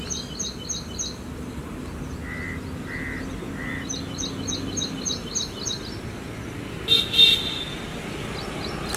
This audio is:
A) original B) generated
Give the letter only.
A